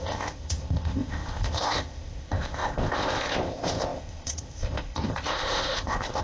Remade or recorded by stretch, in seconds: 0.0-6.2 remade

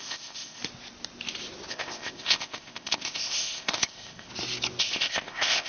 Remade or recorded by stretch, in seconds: 0.0-0.6 remade; 0.6-1.7 recorded; 1.7-4.3 remade; 4.3-4.8 recorded; 4.8-5.7 remade

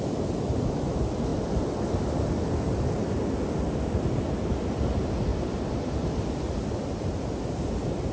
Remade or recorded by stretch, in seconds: 0.0-8.1 recorded

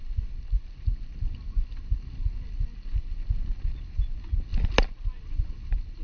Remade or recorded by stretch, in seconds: 0.0-6.0 recorded

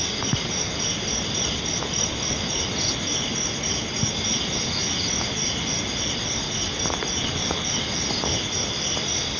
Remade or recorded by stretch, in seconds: 0.0-9.4 recorded